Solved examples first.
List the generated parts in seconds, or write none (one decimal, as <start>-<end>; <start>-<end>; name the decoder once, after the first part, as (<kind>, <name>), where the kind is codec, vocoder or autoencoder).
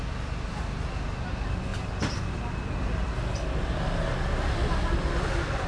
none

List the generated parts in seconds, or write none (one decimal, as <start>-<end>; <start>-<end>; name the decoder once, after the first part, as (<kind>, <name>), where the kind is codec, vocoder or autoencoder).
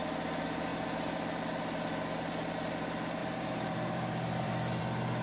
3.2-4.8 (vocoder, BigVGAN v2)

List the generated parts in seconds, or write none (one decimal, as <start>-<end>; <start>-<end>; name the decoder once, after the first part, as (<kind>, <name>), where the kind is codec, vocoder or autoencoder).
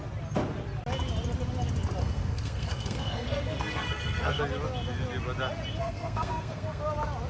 2.0-4.4 (codec, SNAC); 5.8-6.8